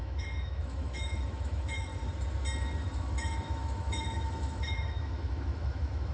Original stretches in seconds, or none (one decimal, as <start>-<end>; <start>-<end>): 1.9-2.8